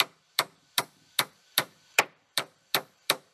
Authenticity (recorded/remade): remade